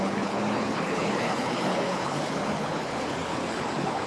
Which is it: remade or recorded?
remade